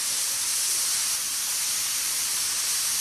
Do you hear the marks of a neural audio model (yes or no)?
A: no